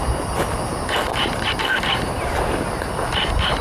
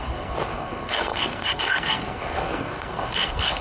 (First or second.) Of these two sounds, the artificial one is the second